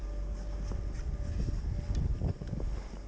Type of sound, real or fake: real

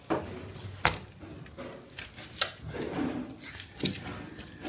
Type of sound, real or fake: real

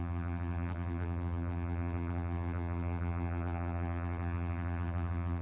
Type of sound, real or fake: fake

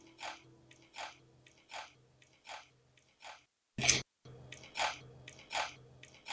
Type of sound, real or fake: real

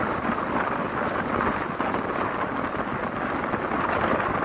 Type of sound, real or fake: real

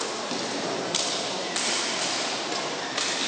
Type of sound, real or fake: real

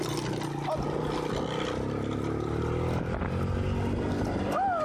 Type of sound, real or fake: real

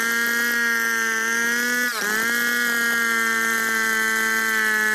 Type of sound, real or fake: real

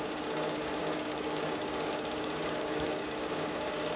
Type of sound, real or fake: fake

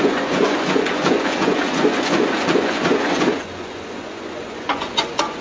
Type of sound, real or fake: fake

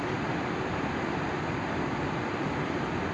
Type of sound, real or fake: real